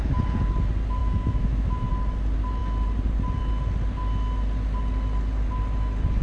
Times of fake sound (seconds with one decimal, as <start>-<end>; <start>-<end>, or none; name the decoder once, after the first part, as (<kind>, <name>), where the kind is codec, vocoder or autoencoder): 1.0-1.9 (autoencoder, DAC-VAE)